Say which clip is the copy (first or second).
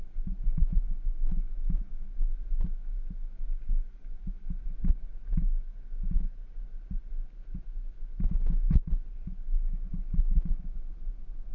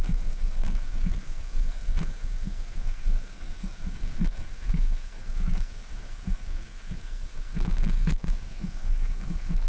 second